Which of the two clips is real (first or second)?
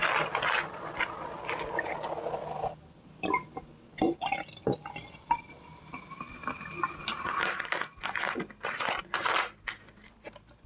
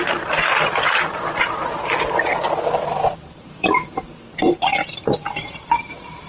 first